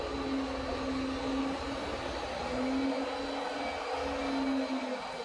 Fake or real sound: real